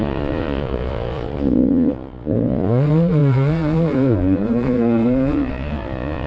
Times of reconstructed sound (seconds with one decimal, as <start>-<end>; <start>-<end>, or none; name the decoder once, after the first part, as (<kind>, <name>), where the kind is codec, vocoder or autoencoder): 0.0-6.3 (vocoder, Vocos)